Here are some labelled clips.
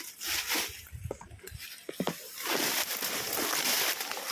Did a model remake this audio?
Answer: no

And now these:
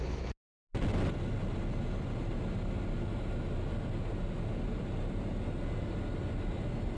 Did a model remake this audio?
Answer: no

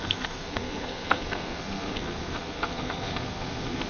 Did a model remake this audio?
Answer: yes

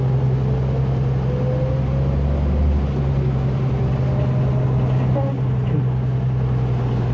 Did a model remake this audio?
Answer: no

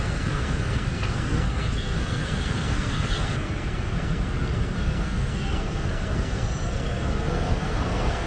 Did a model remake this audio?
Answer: yes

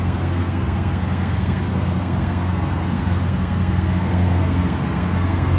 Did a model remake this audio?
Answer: yes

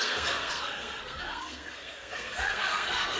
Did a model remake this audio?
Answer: yes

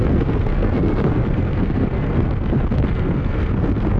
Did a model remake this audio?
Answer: yes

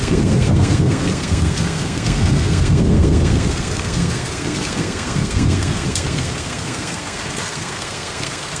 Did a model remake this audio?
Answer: yes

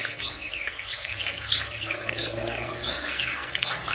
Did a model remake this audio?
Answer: yes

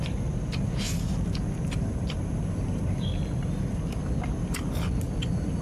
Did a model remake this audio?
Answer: no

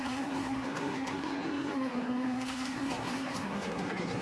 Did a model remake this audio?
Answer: yes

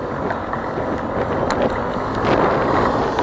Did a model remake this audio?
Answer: no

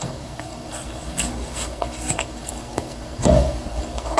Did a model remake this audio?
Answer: yes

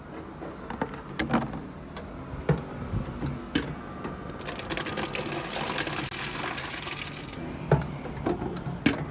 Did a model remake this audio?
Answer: no